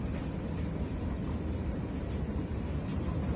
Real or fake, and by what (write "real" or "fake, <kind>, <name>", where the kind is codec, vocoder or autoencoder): real